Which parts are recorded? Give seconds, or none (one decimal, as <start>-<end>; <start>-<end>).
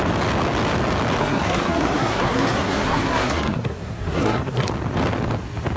0.0-1.2; 4.7-5.8